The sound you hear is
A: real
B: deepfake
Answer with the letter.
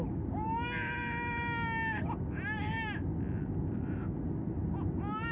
A